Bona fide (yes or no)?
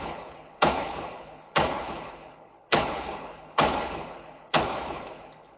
no